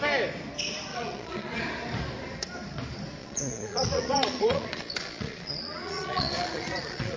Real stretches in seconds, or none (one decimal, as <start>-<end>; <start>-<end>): 0.0-0.9; 1.6-3.2